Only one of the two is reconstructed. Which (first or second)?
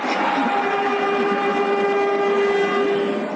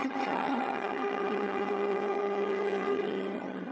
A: second